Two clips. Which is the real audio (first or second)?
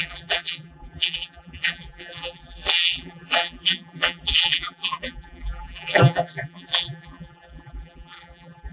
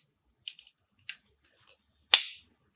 second